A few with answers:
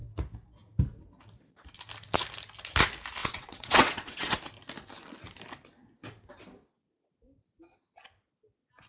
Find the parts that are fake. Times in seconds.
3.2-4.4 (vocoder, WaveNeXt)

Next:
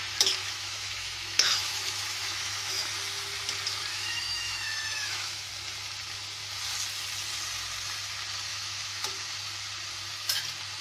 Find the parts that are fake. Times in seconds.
0.4-2.9 (autoencoder, DAC-VAE); 3.9-5.5; 8.5-9.1

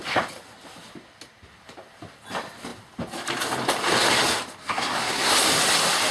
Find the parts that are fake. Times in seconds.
4.6-5.3 (codec, SNAC)

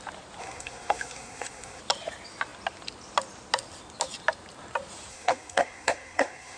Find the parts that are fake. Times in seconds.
0.4-1.8 (codec, SNAC); 5.1-6.6

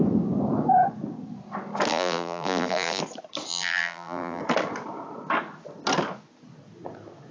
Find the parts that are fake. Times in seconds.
1.9-3.0 (vocoder, BigVGAN v2); 3.5-4.4

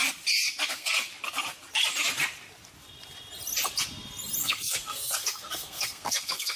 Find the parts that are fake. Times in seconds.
0.7-1.1 (codec, SNAC); 4.4-6.6

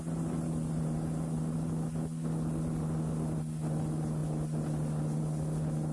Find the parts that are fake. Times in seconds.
none